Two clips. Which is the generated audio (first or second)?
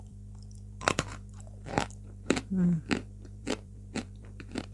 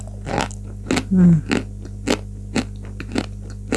first